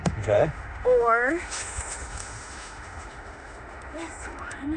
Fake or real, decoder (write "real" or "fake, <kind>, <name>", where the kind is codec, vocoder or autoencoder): fake, autoencoder, DAC-VAE